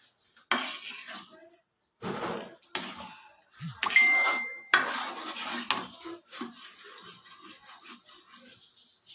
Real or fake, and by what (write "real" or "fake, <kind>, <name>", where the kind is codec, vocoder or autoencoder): real